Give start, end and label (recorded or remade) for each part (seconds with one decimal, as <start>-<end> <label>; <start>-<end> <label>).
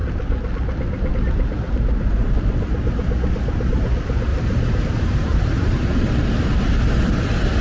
0.0-4.3 recorded; 4.3-7.1 remade; 7.1-7.6 recorded